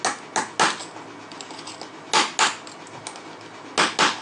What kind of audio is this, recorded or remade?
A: recorded